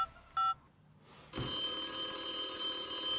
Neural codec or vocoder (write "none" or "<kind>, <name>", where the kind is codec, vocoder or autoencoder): none